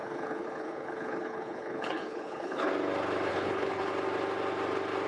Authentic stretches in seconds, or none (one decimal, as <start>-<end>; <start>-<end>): 2.7-3.3; 3.9-5.1